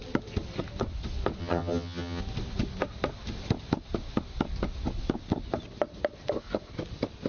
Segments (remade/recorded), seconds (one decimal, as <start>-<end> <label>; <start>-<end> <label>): 0.0-1.4 recorded; 1.4-2.2 remade; 2.2-7.3 recorded